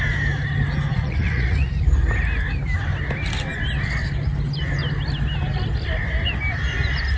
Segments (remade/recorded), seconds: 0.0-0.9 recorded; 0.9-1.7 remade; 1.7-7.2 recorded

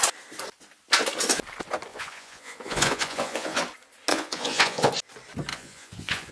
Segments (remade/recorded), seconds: 0.0-1.9 recorded; 1.9-3.6 remade; 3.6-4.1 recorded; 4.1-4.9 remade; 4.9-5.5 recorded; 5.5-6.3 remade

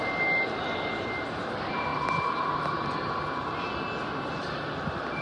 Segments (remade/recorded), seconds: 0.0-5.2 recorded

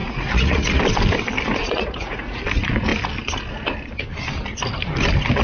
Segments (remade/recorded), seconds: 0.0-0.8 remade; 0.8-1.6 recorded; 1.6-2.4 remade; 2.4-5.4 recorded